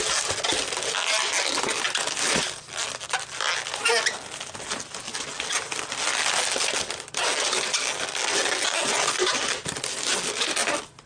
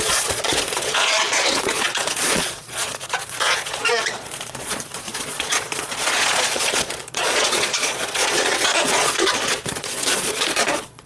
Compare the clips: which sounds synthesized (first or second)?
second